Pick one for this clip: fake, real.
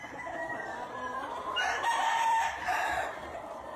fake